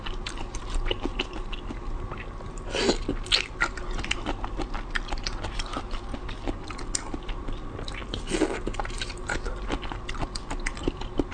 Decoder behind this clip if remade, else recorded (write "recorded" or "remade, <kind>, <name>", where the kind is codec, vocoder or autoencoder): recorded